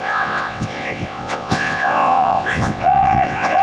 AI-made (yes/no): yes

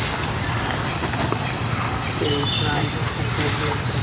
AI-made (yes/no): no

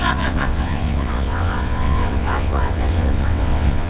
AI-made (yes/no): yes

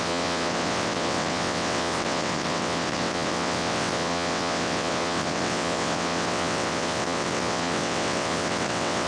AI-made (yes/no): yes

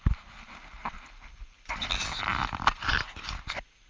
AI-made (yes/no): no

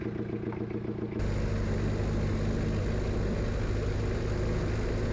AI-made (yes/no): no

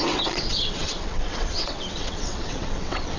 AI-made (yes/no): yes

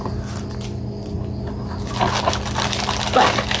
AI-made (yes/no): no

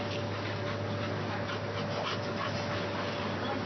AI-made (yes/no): no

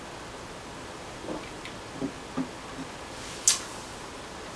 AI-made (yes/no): no